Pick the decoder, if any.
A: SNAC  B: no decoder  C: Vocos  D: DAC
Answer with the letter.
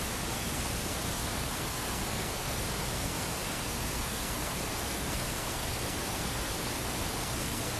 A